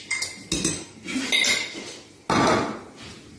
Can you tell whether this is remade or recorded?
recorded